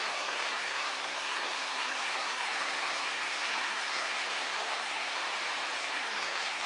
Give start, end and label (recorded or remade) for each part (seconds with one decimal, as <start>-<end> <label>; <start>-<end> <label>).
0.0-5.2 remade; 5.2-5.8 recorded; 5.8-6.7 remade